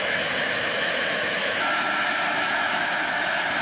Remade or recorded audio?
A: remade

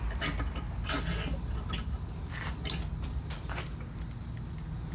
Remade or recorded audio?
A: recorded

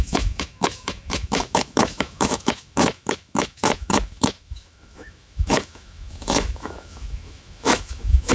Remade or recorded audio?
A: remade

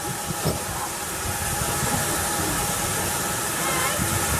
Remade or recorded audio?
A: recorded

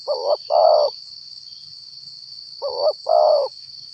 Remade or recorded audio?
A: remade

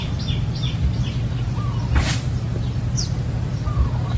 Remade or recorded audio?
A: recorded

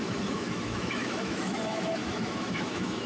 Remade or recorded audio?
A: remade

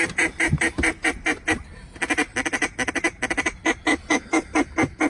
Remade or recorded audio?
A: recorded